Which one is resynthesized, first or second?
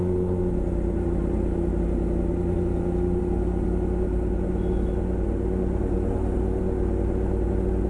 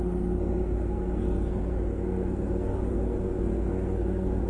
second